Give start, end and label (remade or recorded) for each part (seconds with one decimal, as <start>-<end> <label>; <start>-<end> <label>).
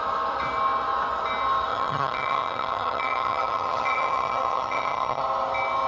0.0-1.7 recorded; 1.7-5.2 remade; 5.2-5.9 recorded